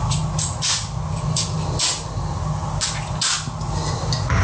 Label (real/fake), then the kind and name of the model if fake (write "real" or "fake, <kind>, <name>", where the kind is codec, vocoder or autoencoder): real